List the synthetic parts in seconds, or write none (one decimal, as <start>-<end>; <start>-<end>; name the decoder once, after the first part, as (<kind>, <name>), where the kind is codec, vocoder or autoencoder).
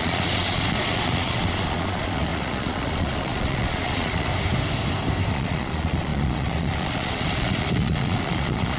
0.0-4.3 (vocoder, Vocos); 5.3-8.8